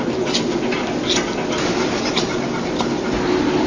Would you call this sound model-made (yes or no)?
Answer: no